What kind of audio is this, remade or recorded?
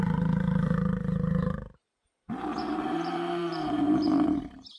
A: remade